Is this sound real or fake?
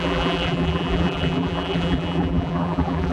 fake